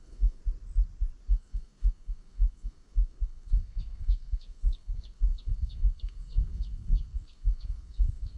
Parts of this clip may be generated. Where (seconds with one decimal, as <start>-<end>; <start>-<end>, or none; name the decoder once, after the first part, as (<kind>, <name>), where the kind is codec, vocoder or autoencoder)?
0.0-0.4 (codec, SNAC); 1.3-8.4